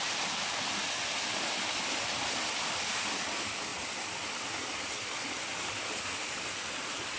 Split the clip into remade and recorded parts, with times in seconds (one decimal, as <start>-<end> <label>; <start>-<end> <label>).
0.0-7.2 recorded